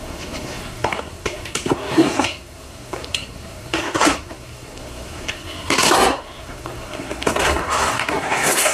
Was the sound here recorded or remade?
remade